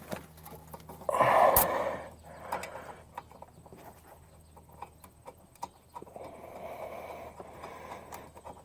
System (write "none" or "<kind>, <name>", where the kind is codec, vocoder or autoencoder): none